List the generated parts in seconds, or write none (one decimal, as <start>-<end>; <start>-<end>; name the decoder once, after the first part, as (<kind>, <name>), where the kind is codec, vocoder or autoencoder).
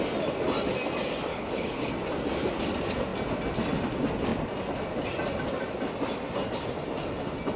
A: 1.3-1.9 (codec, HILCodec)